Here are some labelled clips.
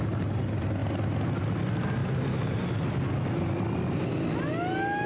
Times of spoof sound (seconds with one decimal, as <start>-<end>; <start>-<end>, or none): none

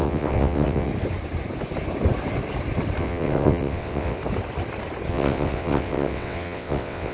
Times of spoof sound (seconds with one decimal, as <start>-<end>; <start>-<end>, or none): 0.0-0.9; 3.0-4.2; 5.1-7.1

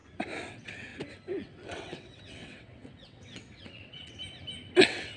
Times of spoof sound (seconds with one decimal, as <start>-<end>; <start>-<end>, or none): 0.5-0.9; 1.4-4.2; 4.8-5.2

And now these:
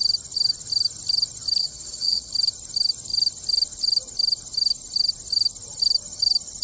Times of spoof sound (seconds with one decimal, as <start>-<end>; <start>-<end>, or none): 1.6-2.3

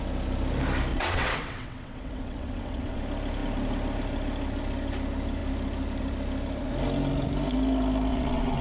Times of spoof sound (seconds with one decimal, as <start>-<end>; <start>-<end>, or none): 0.9-3.0; 8.1-8.6

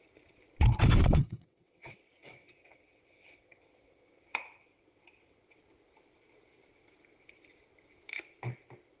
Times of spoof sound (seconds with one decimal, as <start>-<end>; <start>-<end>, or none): 1.0-5.6

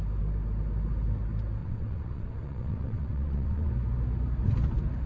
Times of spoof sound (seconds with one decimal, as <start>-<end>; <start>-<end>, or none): 1.6-3.7

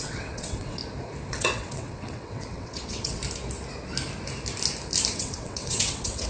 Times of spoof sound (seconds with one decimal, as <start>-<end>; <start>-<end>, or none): 0.0-0.8; 1.3-3.2; 5.1-6.3